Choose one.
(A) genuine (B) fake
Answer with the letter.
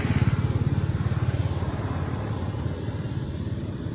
A